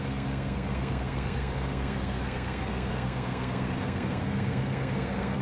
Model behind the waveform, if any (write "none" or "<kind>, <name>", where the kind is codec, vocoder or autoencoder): codec, SNAC